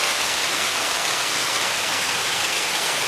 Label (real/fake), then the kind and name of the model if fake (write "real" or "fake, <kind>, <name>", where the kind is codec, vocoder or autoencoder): fake, codec, SNAC